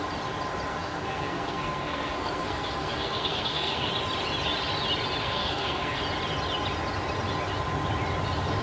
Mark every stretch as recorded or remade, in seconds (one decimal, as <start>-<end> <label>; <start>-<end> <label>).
0.0-0.7 recorded; 0.7-3.9 remade; 3.9-5.2 recorded; 5.2-6.0 remade; 6.0-8.6 recorded